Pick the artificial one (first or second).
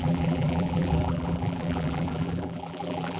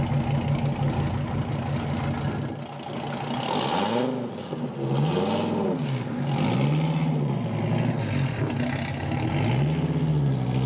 first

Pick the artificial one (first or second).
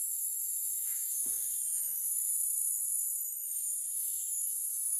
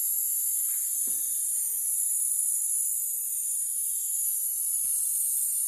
first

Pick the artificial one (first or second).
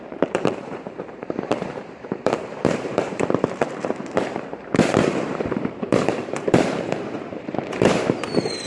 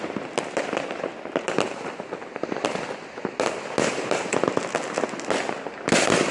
first